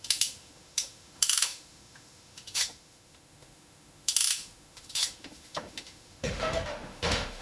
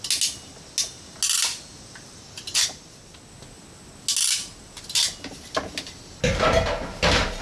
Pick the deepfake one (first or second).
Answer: first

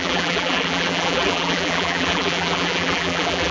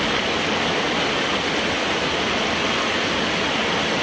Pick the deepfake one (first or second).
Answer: first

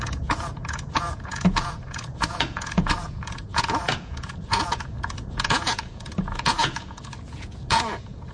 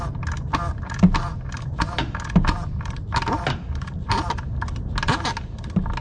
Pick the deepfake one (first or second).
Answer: first